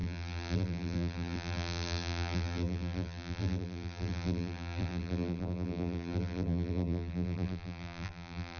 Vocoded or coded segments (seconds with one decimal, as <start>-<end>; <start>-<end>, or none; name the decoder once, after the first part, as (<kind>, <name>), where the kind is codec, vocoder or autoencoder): 0.0-8.6 (vocoder, BigVGAN v2)